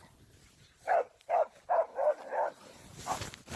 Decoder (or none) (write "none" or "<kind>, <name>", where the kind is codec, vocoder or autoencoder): vocoder, BigVGAN v2